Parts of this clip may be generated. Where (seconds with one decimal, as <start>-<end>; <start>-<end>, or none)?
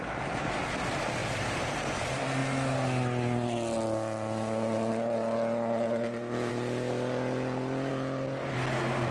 none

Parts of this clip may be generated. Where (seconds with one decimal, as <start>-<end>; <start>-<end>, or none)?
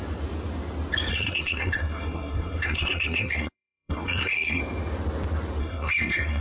1.1-4.6; 5.6-6.4